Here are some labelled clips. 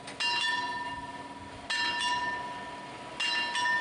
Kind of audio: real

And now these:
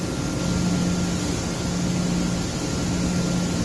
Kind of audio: real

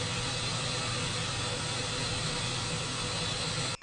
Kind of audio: real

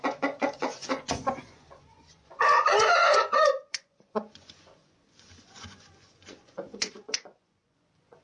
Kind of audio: fake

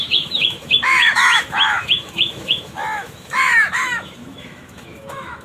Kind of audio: fake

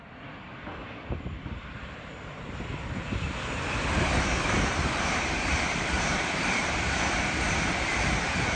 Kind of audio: fake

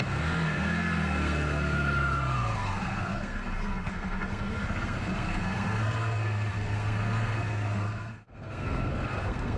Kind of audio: fake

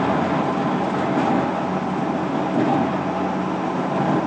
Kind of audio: real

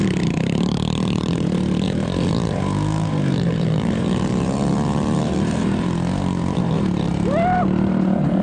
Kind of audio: fake